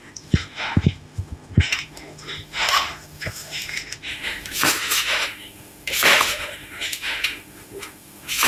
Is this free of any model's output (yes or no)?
no